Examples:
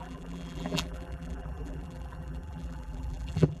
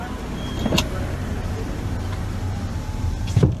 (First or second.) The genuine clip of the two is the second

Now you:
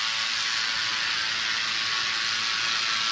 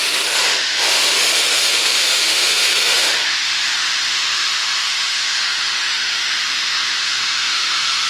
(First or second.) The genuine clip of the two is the first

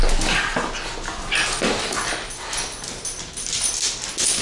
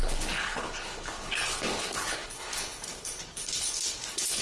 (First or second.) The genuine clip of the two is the first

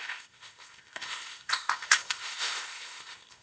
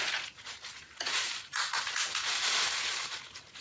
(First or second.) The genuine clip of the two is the second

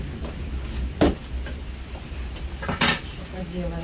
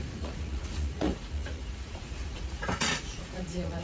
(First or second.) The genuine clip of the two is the first